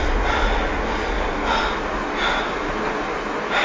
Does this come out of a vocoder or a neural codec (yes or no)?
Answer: no